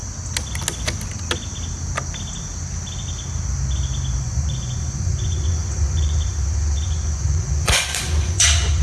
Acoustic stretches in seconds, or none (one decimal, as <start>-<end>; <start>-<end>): 0.0-4.2